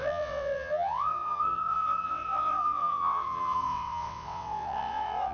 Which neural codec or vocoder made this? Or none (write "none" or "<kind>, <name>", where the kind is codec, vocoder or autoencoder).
vocoder, WaveNeXt